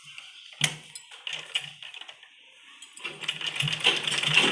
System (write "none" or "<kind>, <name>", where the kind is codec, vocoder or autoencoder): none